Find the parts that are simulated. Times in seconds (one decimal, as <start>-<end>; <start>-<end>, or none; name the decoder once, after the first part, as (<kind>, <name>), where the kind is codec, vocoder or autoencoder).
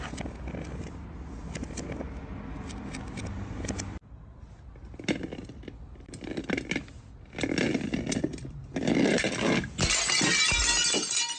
none